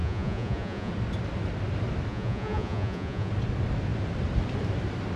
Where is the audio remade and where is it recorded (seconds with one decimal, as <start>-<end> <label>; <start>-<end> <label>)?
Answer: 0.0-0.9 remade; 0.9-2.1 recorded; 2.1-3.3 remade; 3.3-5.2 recorded